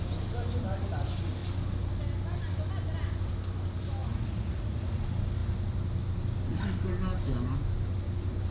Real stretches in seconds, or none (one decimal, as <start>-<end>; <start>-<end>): 0.0-4.0; 5.0-8.5